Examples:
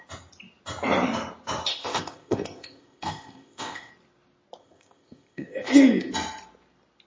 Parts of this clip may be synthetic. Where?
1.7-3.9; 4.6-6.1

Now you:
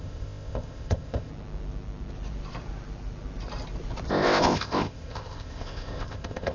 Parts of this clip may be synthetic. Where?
0.0-1.3; 4.1-6.5

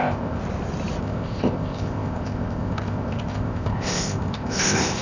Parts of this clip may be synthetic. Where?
0.0-0.4; 1.0-5.0

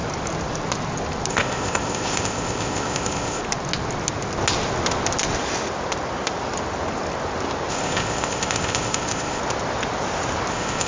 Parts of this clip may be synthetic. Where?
1.3-3.4; 7.7-9.4; 10.5-10.9

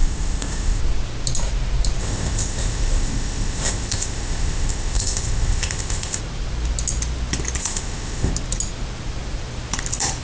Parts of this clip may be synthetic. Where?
0.0-0.8; 2.0-6.2; 7.6-8.3

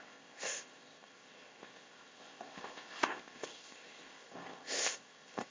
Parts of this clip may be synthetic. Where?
0.0-5.5

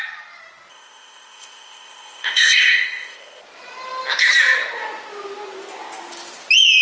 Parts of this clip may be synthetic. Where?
0.7-3.4

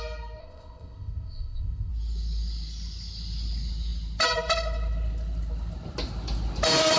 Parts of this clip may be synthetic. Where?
0.4-1.9